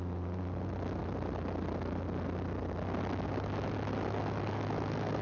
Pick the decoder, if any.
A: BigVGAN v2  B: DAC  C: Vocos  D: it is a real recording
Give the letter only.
D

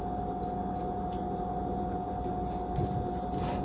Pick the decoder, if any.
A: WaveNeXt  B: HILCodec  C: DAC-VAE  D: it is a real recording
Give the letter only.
D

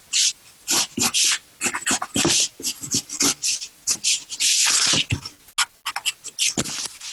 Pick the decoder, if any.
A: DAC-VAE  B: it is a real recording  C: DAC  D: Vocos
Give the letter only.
B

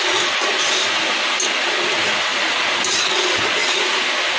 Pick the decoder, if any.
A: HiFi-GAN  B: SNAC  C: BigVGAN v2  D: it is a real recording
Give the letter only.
D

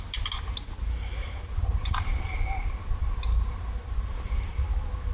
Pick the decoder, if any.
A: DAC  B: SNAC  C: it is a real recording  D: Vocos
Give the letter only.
C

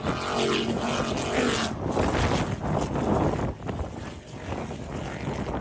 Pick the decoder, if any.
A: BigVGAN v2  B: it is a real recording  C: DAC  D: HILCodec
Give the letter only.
B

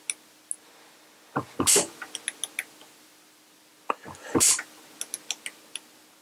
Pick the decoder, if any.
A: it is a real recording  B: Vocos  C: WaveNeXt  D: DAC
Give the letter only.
A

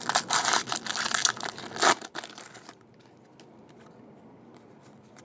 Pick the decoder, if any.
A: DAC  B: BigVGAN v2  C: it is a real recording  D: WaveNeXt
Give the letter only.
C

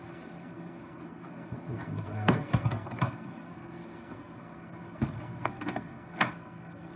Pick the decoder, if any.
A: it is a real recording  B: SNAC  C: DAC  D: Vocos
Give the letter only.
B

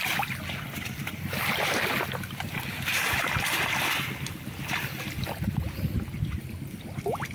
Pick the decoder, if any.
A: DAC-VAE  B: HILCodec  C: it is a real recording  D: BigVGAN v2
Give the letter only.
C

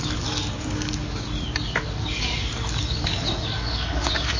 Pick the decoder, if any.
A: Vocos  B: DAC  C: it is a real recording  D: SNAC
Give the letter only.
B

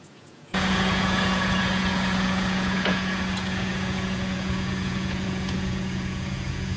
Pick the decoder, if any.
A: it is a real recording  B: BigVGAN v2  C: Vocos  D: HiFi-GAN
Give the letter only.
C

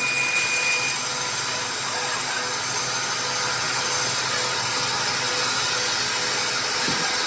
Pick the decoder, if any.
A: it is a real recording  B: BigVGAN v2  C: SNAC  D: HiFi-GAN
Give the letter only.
A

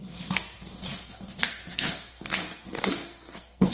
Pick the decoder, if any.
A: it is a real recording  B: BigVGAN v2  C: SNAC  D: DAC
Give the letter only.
C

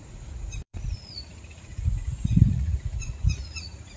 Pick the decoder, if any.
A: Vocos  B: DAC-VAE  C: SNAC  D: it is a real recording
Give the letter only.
A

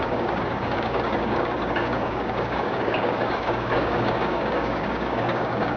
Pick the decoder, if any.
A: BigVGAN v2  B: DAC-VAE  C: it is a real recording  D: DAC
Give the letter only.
D